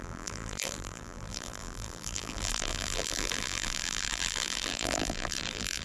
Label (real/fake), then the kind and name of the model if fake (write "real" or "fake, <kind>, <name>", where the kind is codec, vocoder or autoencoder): fake, vocoder, BigVGAN v2